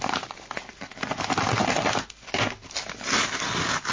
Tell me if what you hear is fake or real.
real